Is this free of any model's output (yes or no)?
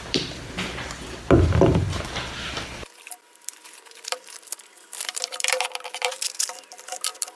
no